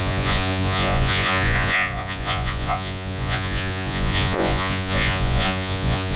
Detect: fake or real fake